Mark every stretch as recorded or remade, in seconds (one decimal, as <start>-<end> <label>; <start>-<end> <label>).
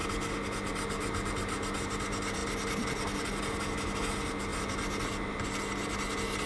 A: 0.0-2.4 recorded; 2.4-4.0 remade; 4.0-4.5 recorded; 4.5-6.1 remade; 6.1-6.5 recorded